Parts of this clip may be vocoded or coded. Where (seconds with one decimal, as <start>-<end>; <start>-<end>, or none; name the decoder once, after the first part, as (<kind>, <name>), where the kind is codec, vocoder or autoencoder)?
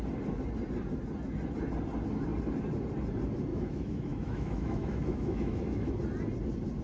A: 3.5-5.9 (autoencoder, DAC-VAE)